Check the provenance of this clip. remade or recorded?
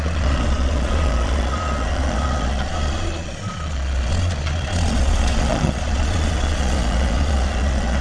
remade